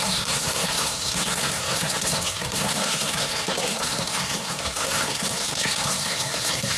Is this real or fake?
fake